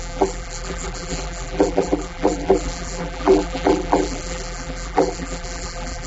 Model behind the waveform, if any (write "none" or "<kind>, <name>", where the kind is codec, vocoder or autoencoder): vocoder, BigVGAN v2